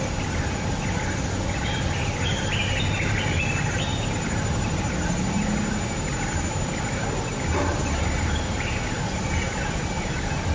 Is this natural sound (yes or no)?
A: yes